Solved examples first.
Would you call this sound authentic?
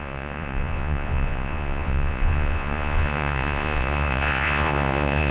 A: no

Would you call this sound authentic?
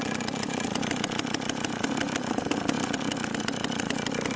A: yes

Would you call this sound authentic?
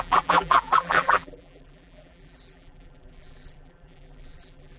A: no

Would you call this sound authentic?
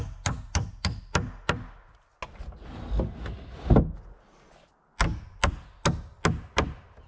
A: yes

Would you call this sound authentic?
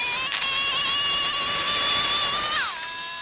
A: yes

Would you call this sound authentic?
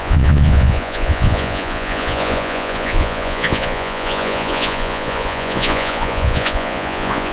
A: no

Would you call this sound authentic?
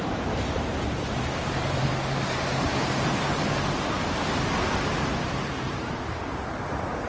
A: no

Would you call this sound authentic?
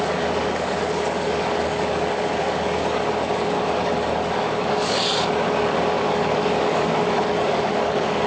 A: no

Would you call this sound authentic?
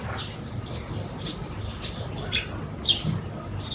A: yes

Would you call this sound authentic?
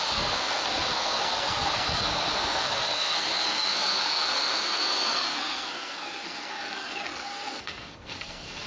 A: no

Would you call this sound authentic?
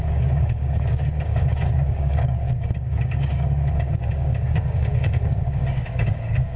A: no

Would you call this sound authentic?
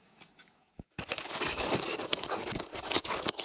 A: no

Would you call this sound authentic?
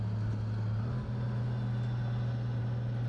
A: yes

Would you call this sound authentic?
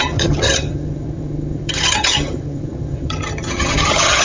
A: no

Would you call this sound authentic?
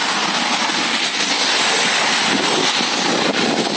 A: yes